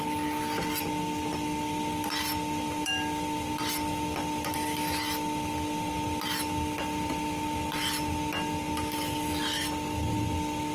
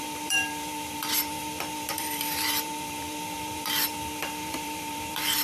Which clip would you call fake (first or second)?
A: second